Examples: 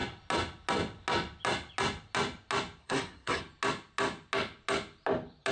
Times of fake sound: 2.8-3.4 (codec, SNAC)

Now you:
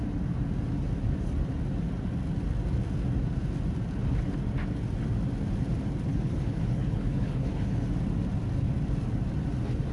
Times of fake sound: 6.1-7.9 (codec, HILCodec)

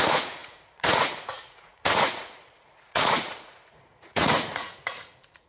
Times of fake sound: 0.0-5.5 (vocoder, Vocos)

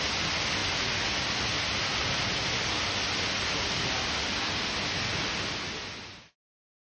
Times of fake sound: none

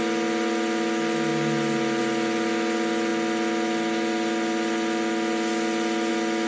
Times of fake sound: none